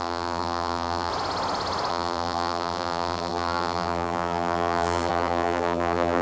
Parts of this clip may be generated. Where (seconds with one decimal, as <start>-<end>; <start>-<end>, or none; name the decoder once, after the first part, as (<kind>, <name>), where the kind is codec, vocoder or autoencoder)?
0.0-1.1 (vocoder, BigVGAN v2); 1.9-6.2